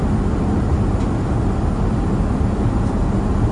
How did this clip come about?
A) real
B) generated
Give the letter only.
A